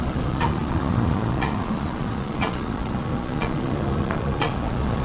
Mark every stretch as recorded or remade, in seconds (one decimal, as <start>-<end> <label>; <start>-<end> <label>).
0.0-5.0 remade